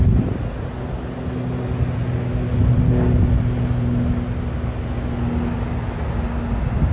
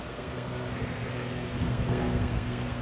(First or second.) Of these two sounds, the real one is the first